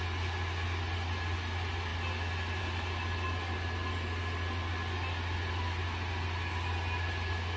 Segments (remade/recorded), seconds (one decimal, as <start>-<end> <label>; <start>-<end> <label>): 0.0-7.6 recorded